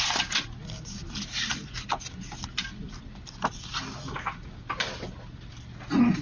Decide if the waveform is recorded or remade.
recorded